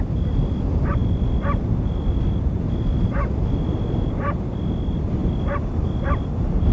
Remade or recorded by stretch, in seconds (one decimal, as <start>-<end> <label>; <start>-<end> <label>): 0.0-6.7 recorded